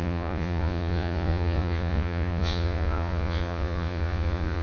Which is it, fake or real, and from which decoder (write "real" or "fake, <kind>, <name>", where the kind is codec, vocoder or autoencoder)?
fake, vocoder, Vocos